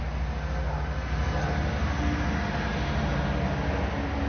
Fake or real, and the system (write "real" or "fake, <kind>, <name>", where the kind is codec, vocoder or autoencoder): real